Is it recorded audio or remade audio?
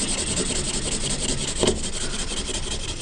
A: recorded